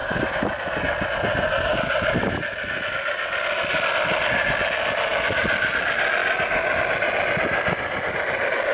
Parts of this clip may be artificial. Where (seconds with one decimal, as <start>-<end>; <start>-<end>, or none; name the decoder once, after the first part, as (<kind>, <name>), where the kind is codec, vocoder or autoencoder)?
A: none